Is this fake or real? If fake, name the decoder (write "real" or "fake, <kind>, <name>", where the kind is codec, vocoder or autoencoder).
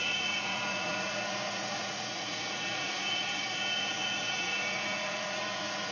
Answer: fake, vocoder, Vocos